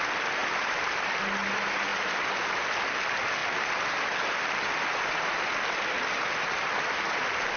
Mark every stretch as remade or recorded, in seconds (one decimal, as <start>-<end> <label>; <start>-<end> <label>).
0.0-0.4 recorded; 0.4-1.2 remade; 1.2-1.9 recorded; 1.9-2.5 remade; 2.5-7.6 recorded